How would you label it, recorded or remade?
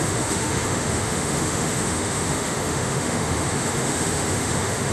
remade